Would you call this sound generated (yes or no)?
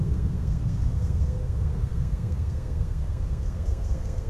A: yes